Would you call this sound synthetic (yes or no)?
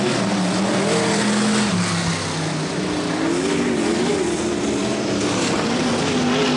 no